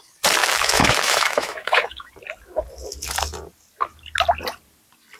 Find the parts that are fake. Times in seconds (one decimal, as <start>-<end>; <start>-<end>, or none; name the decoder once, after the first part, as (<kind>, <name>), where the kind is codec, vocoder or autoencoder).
0.4-2.1 (autoencoder, DAC-VAE)